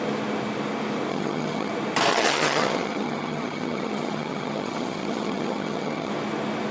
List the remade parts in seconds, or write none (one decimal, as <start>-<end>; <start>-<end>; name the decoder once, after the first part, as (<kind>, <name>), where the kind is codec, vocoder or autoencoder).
1.1-1.7 (vocoder, HiFi-GAN); 2.1-6.1